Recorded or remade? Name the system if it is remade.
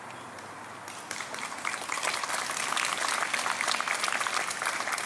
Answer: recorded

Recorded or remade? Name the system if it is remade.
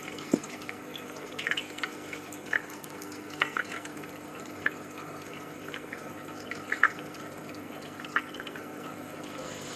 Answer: remade, codec, SNAC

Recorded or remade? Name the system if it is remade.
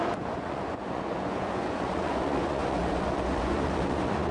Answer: remade, vocoder, Vocos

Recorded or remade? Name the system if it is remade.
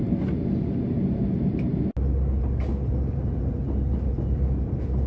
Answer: recorded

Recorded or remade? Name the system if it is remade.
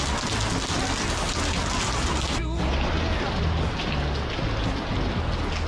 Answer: recorded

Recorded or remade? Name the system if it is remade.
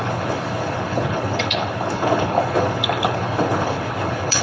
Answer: remade, codec, HILCodec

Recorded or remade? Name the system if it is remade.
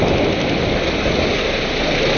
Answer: recorded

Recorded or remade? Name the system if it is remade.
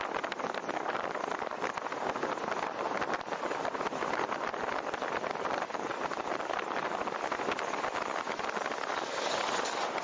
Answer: recorded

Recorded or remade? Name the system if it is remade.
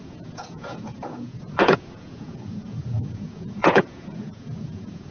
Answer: remade, vocoder, Vocos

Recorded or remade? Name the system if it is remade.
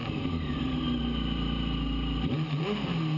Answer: recorded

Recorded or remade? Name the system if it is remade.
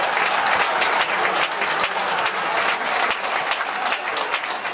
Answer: recorded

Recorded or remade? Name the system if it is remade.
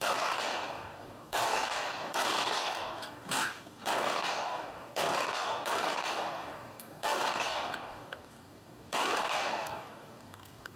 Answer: remade, codec, DAC